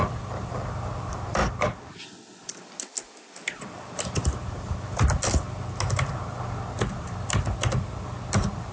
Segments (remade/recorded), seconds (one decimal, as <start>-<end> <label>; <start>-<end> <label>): 0.0-8.7 recorded